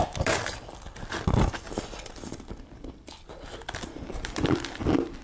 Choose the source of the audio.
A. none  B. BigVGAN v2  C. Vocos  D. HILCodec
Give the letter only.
A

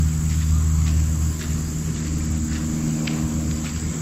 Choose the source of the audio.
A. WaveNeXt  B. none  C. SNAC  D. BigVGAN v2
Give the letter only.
B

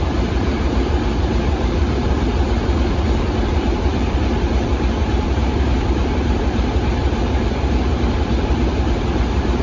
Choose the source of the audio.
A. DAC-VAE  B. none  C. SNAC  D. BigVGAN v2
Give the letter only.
D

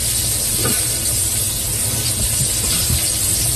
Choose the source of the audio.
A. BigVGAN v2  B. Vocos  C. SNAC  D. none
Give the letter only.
D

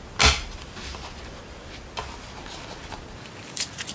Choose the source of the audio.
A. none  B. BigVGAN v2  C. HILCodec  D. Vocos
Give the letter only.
A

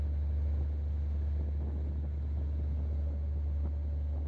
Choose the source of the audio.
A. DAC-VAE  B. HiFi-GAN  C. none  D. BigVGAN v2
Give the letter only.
C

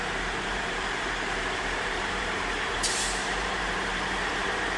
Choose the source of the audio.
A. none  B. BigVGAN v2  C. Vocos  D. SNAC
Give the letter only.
B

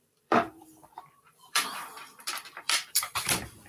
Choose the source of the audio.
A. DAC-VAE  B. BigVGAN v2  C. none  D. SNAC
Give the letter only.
B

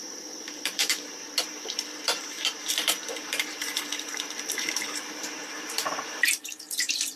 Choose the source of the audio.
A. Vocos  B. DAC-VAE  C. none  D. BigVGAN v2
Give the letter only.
D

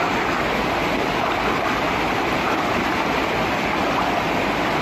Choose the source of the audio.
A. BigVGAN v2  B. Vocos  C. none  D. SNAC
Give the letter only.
C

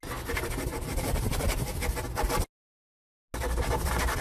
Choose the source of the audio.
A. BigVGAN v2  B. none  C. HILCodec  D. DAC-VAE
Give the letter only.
B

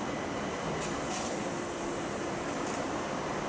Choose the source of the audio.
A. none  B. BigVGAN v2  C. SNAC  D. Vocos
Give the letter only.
B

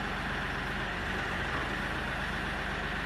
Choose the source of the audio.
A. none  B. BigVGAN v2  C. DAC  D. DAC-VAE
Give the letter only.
A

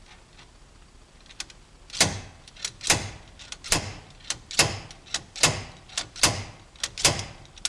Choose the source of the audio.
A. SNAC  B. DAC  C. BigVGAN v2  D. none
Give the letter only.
D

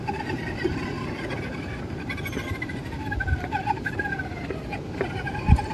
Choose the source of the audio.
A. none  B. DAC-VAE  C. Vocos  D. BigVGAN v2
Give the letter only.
D